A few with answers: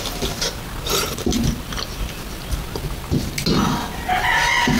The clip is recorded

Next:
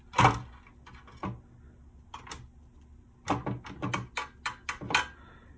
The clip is recorded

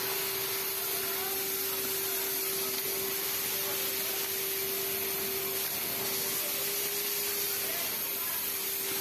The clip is recorded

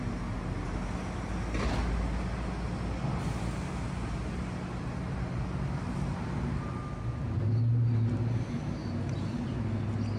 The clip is recorded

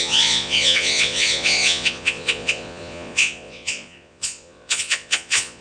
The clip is remade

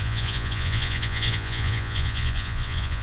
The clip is remade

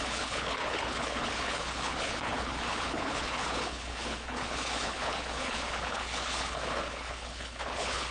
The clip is remade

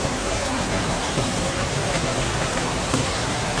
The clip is remade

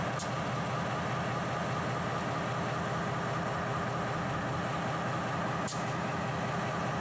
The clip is recorded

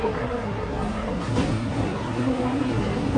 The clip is remade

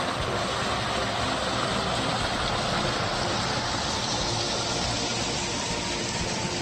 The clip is recorded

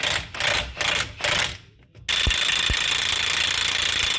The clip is recorded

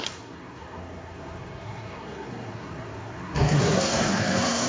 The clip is remade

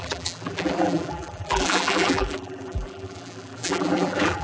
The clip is remade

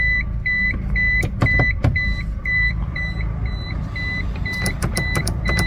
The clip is remade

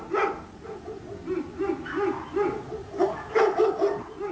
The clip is recorded